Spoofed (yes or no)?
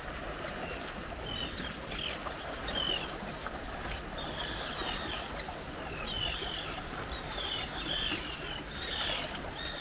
no